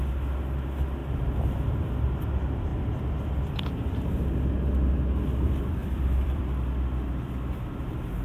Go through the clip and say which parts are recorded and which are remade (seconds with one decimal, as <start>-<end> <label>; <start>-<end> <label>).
0.0-1.0 recorded; 1.0-2.2 remade; 2.2-5.8 recorded; 5.8-6.4 remade; 6.4-8.2 recorded